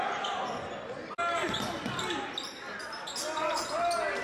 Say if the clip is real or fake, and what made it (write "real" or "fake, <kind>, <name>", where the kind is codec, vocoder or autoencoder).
real